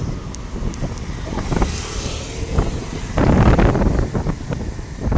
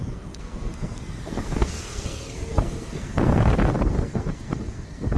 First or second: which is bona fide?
first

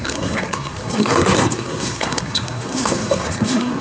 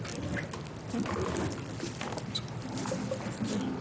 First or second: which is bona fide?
second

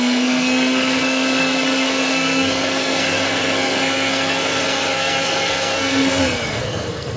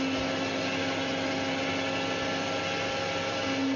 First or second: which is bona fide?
second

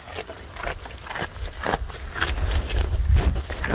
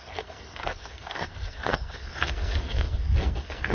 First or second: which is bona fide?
first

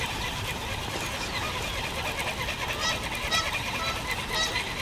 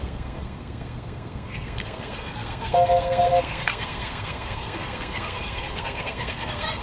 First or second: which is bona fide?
first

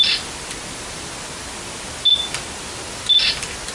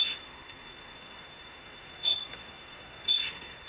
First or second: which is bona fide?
first